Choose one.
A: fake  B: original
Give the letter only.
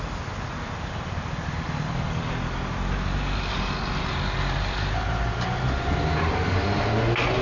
B